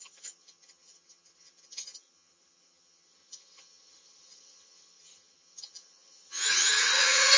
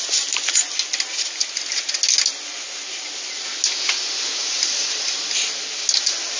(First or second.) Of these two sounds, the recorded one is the second